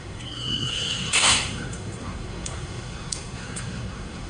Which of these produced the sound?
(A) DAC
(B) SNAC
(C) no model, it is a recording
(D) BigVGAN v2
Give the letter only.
B